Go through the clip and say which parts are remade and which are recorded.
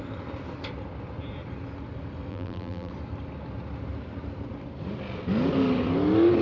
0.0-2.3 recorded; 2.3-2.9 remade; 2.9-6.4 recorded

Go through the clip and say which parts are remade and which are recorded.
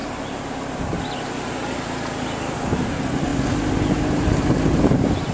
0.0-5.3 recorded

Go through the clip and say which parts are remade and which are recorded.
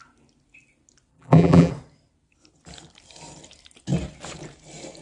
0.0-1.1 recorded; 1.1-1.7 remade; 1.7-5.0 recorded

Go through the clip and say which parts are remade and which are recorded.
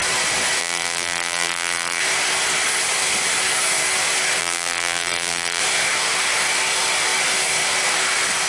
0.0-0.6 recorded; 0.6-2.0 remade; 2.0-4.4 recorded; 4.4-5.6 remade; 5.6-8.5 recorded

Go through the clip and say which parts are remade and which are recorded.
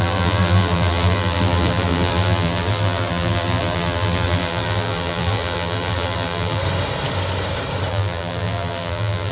0.0-6.6 remade; 6.6-7.9 recorded; 7.9-9.3 remade